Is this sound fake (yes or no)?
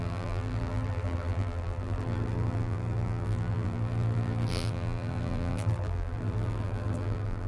yes